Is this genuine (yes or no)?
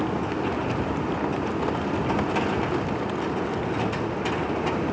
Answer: yes